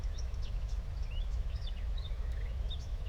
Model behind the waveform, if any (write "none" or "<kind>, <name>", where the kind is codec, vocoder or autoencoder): autoencoder, DAC-VAE